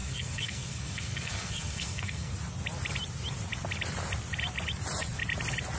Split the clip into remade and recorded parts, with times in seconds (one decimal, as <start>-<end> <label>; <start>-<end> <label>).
0.0-2.3 remade; 2.3-5.8 recorded